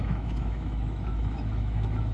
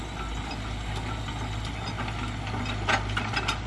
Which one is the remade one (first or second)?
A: first